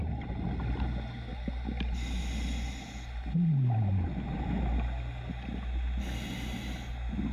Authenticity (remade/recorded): recorded